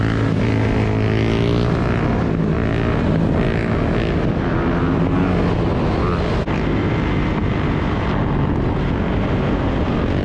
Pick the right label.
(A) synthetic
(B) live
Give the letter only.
B